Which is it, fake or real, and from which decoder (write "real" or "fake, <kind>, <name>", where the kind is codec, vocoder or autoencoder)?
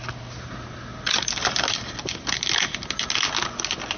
real